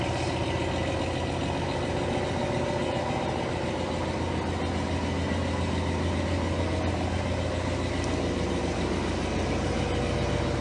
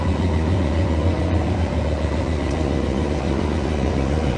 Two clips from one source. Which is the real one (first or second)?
first